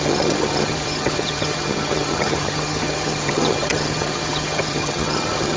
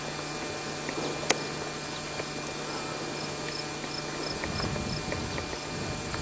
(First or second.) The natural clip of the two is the second